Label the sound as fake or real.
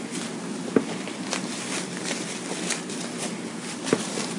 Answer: real